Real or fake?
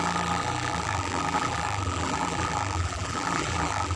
fake